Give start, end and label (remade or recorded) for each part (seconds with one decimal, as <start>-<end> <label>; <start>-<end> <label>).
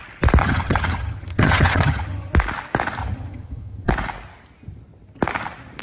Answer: 0.0-0.4 recorded; 0.4-2.3 remade; 2.3-3.0 recorded; 3.0-3.9 remade; 3.9-5.8 recorded